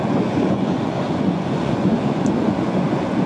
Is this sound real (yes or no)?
no